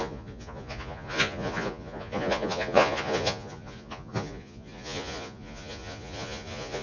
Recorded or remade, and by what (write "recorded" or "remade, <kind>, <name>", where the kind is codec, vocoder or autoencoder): remade, vocoder, Vocos